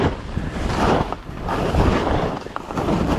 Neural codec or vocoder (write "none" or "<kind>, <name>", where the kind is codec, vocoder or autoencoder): none